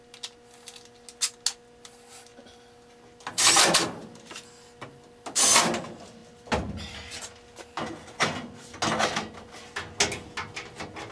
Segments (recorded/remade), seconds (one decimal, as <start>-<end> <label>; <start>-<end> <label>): 0.0-11.1 recorded